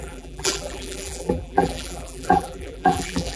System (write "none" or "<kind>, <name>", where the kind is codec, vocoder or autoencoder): vocoder, BigVGAN v2